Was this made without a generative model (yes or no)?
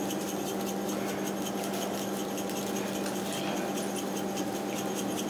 yes